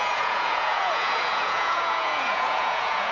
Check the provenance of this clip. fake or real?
fake